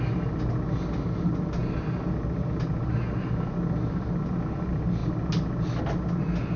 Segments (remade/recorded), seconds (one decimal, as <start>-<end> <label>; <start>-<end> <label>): 0.0-6.6 recorded